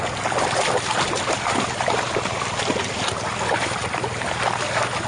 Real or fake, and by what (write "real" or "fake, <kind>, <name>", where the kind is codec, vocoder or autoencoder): real